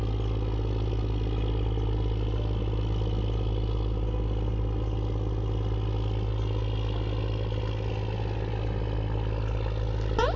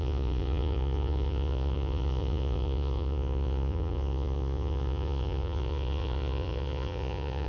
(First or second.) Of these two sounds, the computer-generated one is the second